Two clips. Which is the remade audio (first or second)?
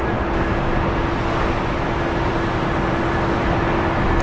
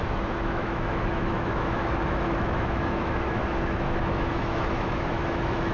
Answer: second